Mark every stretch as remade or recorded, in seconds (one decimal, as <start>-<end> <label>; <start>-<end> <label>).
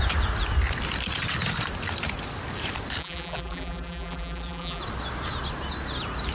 0.0-3.0 recorded; 3.0-4.8 remade; 4.8-6.3 recorded